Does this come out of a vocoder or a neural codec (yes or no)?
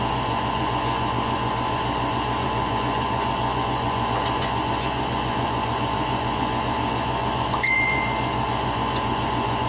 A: yes